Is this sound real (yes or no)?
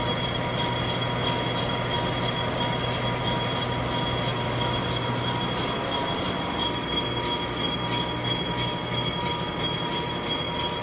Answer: yes